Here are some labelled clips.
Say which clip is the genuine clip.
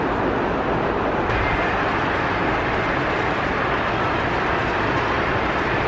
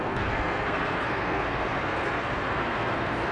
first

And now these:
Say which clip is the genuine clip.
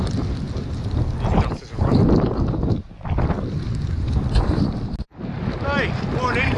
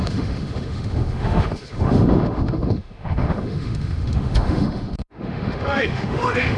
first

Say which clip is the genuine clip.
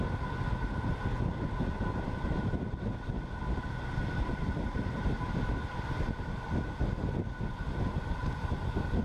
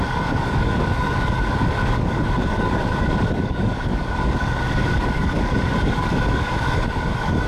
first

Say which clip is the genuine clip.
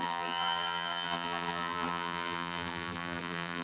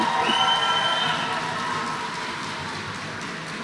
second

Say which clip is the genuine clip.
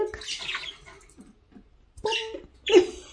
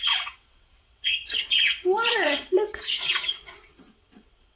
first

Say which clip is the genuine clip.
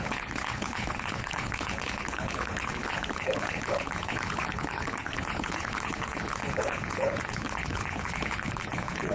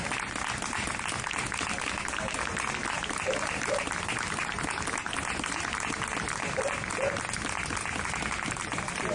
second